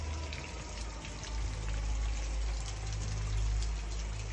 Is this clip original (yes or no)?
yes